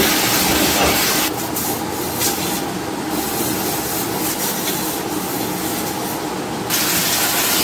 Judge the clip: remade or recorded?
recorded